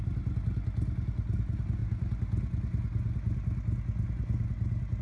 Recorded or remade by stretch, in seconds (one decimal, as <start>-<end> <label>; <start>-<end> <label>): 0.0-5.0 recorded